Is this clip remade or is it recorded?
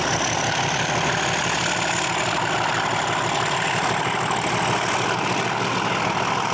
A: recorded